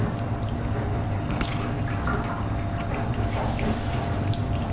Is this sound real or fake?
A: real